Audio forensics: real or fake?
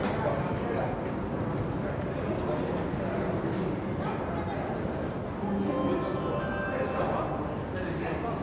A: real